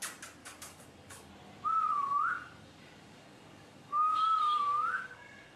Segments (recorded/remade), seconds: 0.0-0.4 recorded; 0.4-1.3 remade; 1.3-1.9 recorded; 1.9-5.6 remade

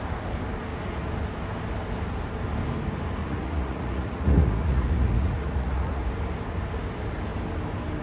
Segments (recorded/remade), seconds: 0.0-3.2 recorded; 3.2-6.0 remade; 6.0-8.0 recorded